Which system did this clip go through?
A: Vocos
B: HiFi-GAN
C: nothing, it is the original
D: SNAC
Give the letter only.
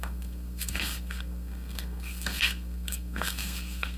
D